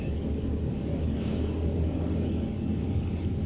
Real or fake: fake